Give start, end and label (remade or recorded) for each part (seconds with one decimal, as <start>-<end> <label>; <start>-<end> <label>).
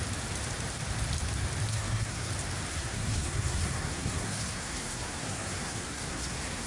0.0-1.7 recorded; 1.7-2.3 remade; 2.3-2.7 recorded; 2.7-6.7 remade